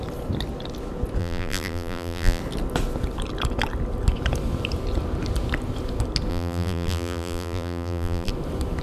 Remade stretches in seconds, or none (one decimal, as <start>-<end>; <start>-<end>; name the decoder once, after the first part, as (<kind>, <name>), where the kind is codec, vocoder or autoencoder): 1.2-2.4 (vocoder, BigVGAN v2); 6.3-8.3